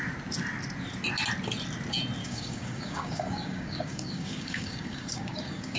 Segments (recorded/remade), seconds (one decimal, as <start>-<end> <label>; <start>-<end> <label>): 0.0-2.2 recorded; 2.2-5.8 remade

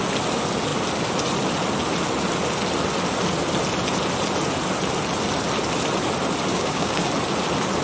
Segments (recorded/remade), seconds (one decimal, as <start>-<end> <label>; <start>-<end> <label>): 0.0-6.5 recorded; 6.5-7.1 remade; 7.1-7.8 recorded

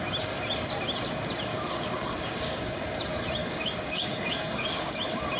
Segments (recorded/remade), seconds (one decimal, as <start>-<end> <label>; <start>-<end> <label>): 0.0-1.5 recorded; 1.5-2.8 remade; 2.8-3.4 recorded; 3.4-5.0 remade; 5.0-5.4 recorded

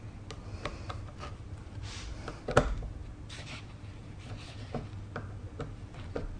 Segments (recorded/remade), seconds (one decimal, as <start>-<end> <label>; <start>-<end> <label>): 0.0-6.4 recorded

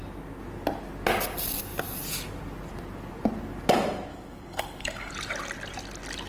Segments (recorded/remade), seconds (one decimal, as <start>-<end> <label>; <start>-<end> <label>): 0.0-4.1 recorded; 4.1-5.1 remade; 5.1-6.3 recorded

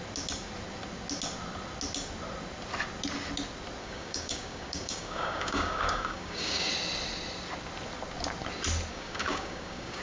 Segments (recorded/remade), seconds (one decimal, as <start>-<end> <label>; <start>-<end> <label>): 0.0-3.8 recorded; 3.8-6.7 remade; 6.7-8.9 recorded; 8.9-10.0 remade

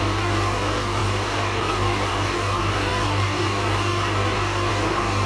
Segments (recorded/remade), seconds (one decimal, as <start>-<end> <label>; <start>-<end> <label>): 0.0-5.3 remade